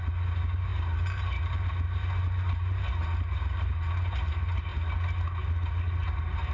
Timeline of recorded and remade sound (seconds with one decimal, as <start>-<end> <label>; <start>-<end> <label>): 0.0-6.5 recorded

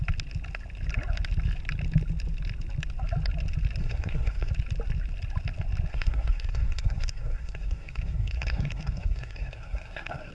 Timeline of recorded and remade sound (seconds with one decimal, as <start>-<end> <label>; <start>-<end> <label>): 0.0-3.8 recorded; 3.8-4.5 remade; 4.5-5.9 recorded; 5.9-10.3 remade

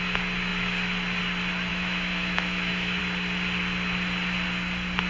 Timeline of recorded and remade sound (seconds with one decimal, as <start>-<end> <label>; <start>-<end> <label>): 0.0-1.7 recorded; 1.7-3.0 remade; 3.0-5.1 recorded

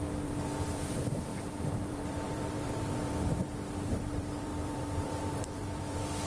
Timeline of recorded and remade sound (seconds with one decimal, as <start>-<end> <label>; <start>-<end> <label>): 0.0-1.3 remade; 1.3-1.9 recorded; 1.9-6.3 remade